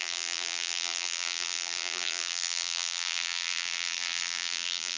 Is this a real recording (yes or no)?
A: no